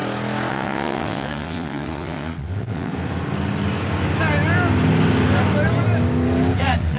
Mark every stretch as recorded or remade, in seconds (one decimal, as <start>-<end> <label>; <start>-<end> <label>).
0.0-0.5 recorded; 0.5-2.9 remade; 2.9-6.6 recorded; 6.6-7.0 remade